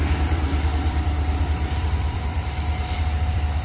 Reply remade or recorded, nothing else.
remade